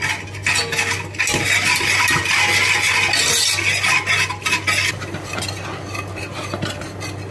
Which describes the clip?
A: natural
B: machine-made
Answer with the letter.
A